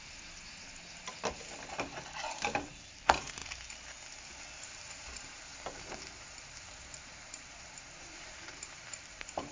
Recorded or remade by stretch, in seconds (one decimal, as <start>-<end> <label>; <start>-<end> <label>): 0.0-3.4 remade; 3.4-4.6 recorded; 4.6-9.5 remade

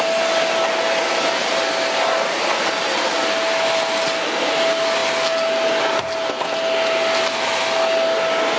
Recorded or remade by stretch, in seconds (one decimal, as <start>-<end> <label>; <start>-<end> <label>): 0.0-8.6 recorded